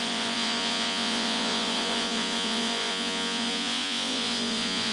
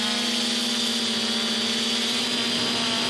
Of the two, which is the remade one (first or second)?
first